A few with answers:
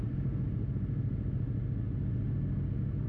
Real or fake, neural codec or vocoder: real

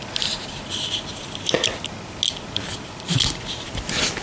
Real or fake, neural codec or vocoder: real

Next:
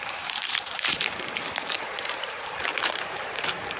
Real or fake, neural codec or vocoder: fake, vocoder, BigVGAN v2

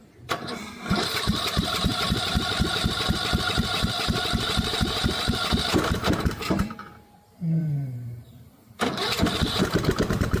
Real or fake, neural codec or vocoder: fake, vocoder, BigVGAN v2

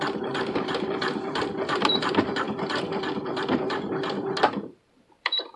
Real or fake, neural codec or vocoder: fake, vocoder, BigVGAN v2